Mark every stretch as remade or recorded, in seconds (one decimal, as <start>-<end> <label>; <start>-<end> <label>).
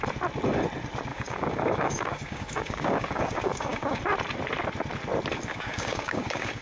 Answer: 0.0-1.1 recorded; 1.1-4.0 remade; 4.0-5.5 recorded; 5.5-6.6 remade